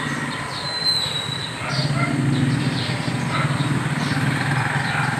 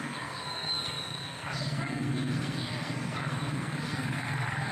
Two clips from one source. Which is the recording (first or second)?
first